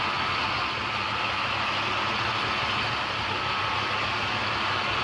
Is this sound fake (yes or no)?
no